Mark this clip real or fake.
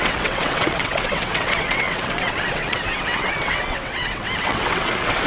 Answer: fake